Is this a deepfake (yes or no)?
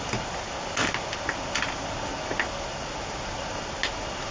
no